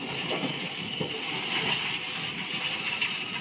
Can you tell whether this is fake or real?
real